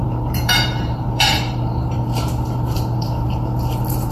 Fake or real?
fake